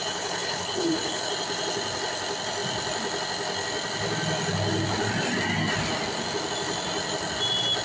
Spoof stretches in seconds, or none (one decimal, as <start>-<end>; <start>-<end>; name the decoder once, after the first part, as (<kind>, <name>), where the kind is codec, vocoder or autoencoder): 0.0-1.3 (codec, HILCodec)

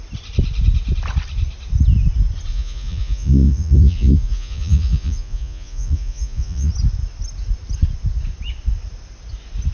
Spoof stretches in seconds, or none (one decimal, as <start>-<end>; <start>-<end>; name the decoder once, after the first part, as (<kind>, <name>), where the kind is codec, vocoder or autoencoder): 2.5-6.7 (vocoder, Vocos)